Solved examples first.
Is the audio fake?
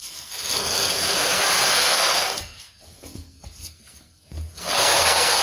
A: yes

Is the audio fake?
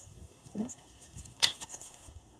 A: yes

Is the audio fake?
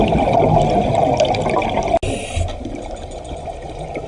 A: no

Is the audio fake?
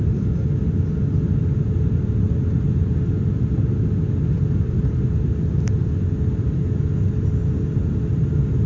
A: no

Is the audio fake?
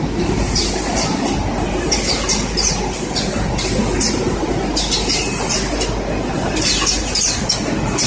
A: no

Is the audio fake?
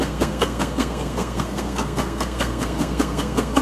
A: yes